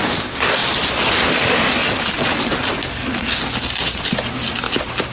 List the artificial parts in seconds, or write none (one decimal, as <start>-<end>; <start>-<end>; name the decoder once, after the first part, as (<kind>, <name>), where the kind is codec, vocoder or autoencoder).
1.8-2.7 (vocoder, BigVGAN v2)